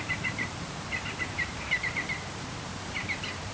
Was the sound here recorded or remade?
remade